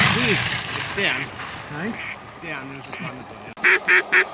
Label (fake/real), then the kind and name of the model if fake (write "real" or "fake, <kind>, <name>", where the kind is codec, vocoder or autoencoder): real